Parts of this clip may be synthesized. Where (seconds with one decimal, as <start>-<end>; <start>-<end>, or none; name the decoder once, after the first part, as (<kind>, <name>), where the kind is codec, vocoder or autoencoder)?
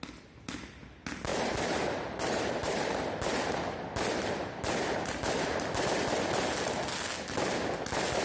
1.3-3.2 (vocoder, BigVGAN v2)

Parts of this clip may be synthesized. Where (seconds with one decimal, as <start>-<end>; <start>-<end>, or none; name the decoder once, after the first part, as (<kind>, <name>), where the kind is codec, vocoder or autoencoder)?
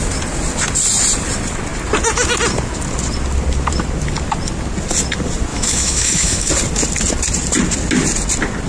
5.5-6.5 (autoencoder, DAC-VAE)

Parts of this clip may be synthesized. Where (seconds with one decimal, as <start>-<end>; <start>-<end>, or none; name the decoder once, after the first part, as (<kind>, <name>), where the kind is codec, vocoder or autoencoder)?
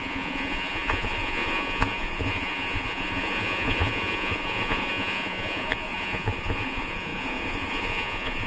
0.0-8.5 (vocoder, Vocos)